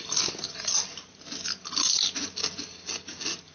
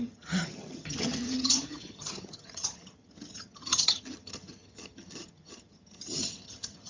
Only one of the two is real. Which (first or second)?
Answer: first